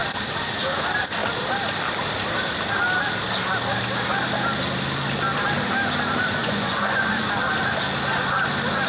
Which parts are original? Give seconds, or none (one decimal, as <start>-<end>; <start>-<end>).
0.0-6.4; 7.2-8.9